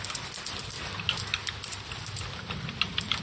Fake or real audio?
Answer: real